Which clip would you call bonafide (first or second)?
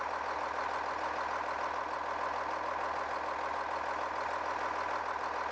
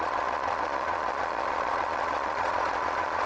first